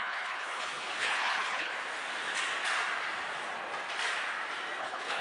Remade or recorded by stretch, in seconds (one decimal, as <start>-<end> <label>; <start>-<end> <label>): 0.0-1.7 remade; 1.7-4.8 recorded; 4.8-5.2 remade